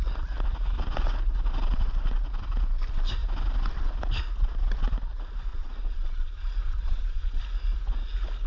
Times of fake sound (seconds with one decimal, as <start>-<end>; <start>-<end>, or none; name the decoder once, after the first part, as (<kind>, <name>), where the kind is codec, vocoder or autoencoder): 5.5-7.4 (vocoder, Vocos)